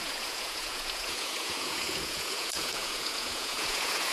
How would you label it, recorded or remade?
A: remade